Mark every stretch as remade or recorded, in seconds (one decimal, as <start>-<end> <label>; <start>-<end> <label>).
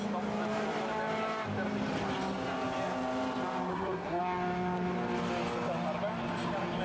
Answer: 0.0-3.7 recorded; 3.7-4.2 remade; 4.2-6.8 recorded